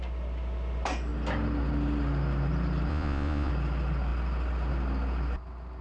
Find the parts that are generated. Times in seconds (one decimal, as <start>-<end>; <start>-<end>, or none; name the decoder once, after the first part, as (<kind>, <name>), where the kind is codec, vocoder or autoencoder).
2.9-3.5 (vocoder, Vocos)